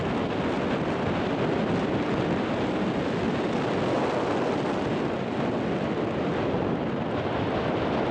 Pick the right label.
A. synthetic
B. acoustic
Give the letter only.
B